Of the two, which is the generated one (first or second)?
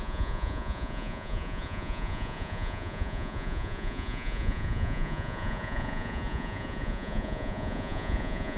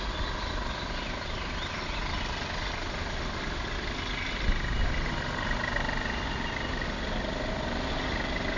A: first